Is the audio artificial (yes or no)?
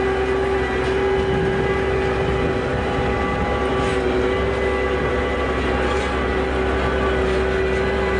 no